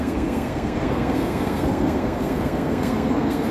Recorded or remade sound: remade